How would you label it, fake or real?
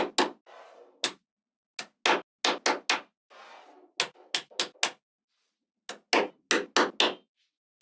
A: real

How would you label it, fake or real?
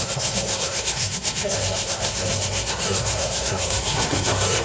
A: fake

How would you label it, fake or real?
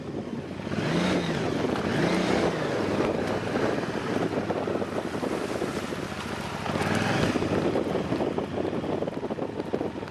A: real